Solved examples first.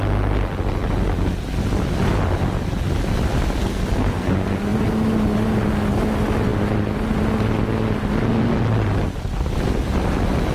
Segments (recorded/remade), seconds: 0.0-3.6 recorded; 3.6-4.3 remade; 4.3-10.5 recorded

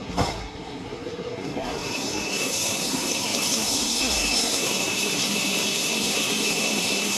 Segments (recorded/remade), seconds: 0.0-7.2 remade

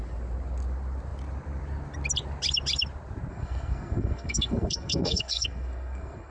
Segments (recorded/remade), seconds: 0.0-3.3 recorded; 3.3-6.3 remade

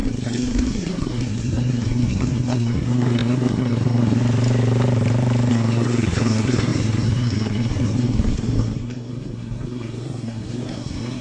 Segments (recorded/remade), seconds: 0.0-4.2 remade; 4.2-5.5 recorded; 5.5-11.2 remade